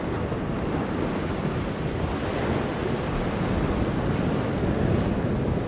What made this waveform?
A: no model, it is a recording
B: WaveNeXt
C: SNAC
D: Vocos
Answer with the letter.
A